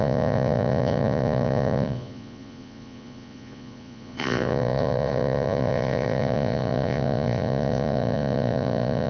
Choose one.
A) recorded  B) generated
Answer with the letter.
B